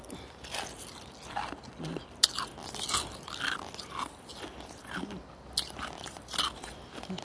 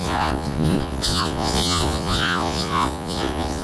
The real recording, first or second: first